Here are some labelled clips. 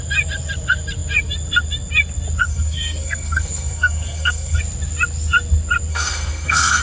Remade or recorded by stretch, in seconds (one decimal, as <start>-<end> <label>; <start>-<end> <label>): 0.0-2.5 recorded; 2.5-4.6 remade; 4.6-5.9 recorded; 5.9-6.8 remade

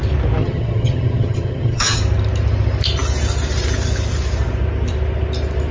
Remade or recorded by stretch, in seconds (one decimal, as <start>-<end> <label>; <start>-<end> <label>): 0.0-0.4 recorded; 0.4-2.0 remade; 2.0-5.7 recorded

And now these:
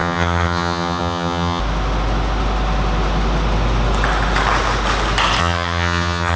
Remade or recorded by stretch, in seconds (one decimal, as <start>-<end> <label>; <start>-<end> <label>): 0.0-1.6 remade; 1.6-5.4 recorded; 5.4-6.4 remade